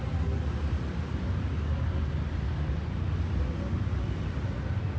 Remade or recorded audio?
recorded